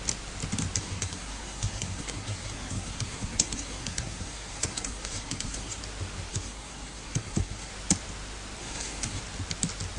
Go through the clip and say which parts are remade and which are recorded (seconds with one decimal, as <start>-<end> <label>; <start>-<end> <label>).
0.0-0.8 recorded; 0.8-5.8 remade; 5.8-6.3 recorded; 6.3-7.7 remade; 7.7-8.6 recorded; 8.6-9.2 remade; 9.2-10.0 recorded